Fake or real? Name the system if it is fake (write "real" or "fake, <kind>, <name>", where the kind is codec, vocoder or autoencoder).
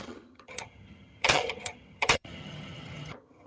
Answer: fake, vocoder, HiFi-GAN